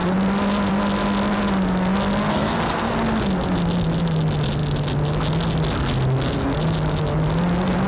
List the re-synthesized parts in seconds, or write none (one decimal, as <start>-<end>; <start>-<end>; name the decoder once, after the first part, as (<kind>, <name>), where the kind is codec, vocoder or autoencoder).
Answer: 2.3-2.9 (codec, SNAC)